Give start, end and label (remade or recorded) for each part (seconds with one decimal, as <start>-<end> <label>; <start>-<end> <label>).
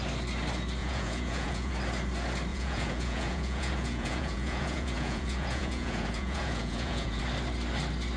0.0-0.8 recorded; 0.8-1.7 remade; 1.7-2.5 recorded; 2.5-7.2 remade; 7.2-8.2 recorded